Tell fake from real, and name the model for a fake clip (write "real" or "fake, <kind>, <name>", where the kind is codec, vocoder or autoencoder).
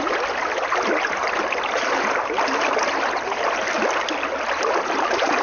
real